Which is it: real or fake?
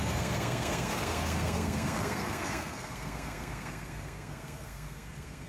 fake